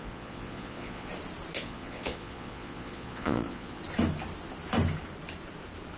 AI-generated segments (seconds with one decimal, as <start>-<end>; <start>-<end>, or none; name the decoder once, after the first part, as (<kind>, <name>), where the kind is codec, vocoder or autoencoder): 0.0-1.1 (vocoder, Vocos); 1.6-3.8